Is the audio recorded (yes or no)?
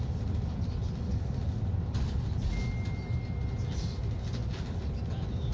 yes